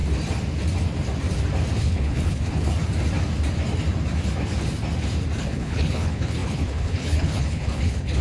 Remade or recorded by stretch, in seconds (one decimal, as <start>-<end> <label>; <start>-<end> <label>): 0.0-1.8 recorded; 1.8-2.7 remade; 2.7-5.4 recorded; 5.4-8.2 remade